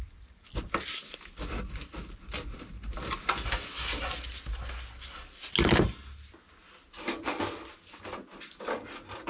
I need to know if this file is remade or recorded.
recorded